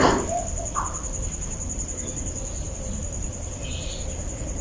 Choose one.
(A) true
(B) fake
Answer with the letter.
A